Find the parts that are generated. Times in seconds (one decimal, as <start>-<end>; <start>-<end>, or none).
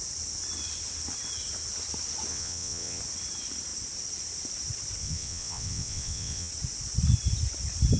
2.3-3.0; 5.0-6.5